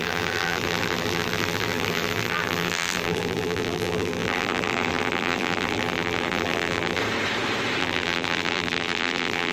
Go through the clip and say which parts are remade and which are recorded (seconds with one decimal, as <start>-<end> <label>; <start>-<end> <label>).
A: 0.0-7.0 remade; 7.0-7.8 recorded; 7.8-9.5 remade